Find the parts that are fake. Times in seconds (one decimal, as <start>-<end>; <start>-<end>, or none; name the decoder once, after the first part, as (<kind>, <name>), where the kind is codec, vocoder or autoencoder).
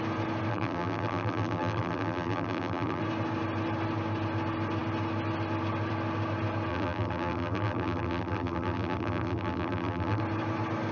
0.5-3.0 (vocoder, BigVGAN v2); 6.7-10.2